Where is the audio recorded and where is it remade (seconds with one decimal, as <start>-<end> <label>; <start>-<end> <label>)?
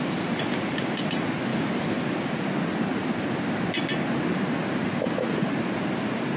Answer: 0.0-1.5 recorded; 1.5-3.4 remade; 3.4-6.4 recorded